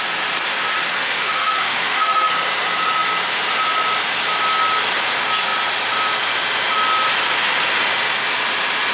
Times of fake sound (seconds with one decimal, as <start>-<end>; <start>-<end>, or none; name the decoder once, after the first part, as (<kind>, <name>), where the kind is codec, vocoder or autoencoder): 1.0-2.3 (autoencoder, DAC-VAE)